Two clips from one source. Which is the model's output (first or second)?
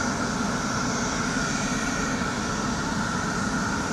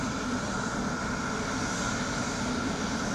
first